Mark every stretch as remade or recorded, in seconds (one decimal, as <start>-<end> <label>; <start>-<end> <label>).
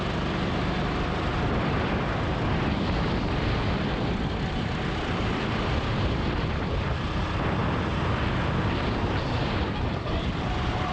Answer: 0.0-7.6 remade; 7.6-8.5 recorded; 8.5-10.9 remade